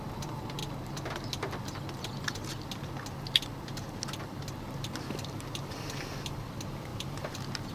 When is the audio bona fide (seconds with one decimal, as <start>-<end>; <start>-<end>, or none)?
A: 0.6-2.2